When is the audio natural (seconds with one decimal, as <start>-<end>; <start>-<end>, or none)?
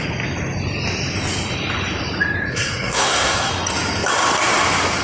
0.0-2.5; 3.5-5.0